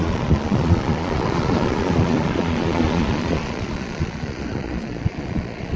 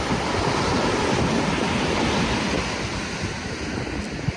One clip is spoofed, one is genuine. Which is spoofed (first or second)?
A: first